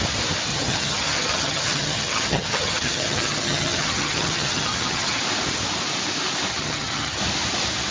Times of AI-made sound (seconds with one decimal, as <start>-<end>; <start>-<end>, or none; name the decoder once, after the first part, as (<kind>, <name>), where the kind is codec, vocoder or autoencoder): 0.5-5.2 (vocoder, HiFi-GAN); 6.5-7.2